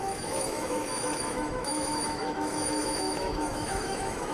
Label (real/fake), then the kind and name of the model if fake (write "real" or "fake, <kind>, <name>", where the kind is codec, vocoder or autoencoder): fake, autoencoder, DAC-VAE